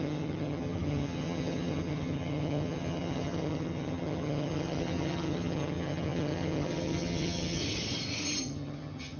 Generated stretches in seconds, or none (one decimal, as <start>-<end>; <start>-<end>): 0.0-7.6; 8.4-9.2